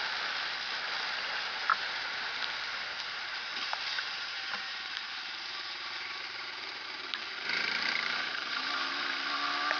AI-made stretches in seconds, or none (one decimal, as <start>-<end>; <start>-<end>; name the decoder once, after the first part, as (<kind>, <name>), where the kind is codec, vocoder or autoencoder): 1.7-2.3 (vocoder, BigVGAN v2); 3.9-8.6